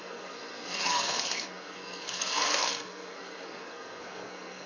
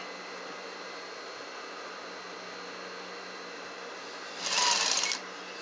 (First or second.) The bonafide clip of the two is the second